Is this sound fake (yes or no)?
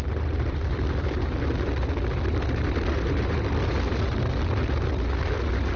no